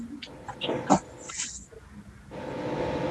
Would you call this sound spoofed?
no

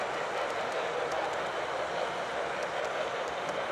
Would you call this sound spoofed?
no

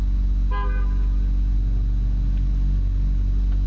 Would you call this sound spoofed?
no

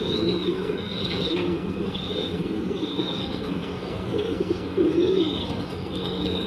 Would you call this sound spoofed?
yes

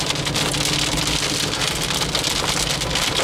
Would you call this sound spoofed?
no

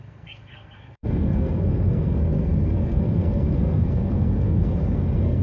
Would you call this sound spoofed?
yes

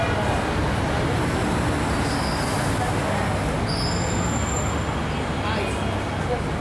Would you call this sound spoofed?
no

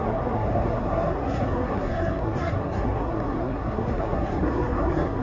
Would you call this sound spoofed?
yes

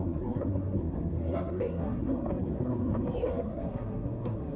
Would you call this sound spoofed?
yes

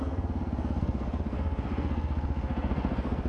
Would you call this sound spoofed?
yes